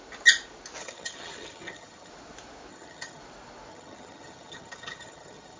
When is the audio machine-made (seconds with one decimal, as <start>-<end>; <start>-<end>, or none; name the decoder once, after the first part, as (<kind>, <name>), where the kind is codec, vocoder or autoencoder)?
0.8-2.1 (vocoder, HiFi-GAN); 2.7-3.2; 3.7-5.6